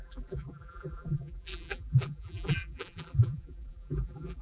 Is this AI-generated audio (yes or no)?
yes